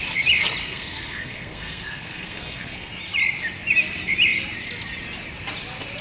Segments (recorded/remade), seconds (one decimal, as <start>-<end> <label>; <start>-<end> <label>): 0.0-0.6 recorded; 0.6-2.9 remade; 2.9-6.0 recorded